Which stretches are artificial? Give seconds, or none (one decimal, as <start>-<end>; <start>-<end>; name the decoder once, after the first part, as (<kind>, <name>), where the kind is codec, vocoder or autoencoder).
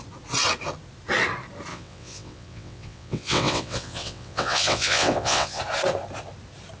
1.7-5.6 (vocoder, WaveNeXt)